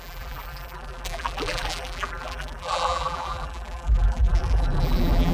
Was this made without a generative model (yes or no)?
no